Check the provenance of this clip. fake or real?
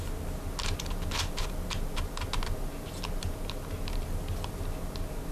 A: real